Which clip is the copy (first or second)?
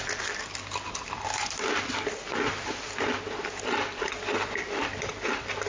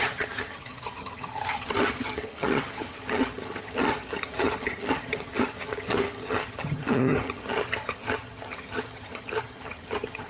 second